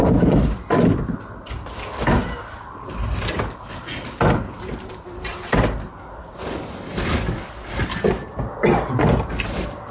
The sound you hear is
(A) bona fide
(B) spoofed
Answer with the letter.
A